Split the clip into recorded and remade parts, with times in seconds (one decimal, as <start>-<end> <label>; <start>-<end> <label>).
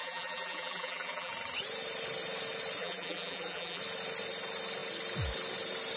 0.0-1.3 remade; 1.3-2.8 recorded; 2.8-3.8 remade; 3.8-6.0 recorded